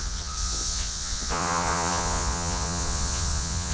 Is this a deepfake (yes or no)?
yes